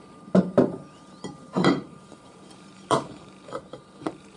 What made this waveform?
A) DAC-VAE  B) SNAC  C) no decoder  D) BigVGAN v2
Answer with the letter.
D